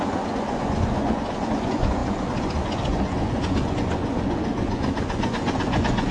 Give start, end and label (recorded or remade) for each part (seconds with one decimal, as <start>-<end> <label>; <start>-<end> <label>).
0.0-6.1 remade